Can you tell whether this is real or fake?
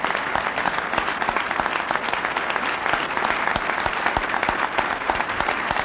real